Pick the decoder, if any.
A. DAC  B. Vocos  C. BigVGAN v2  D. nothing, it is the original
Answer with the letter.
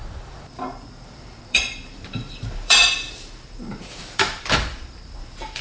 C